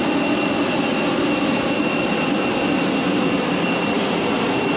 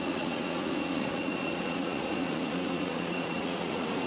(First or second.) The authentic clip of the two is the first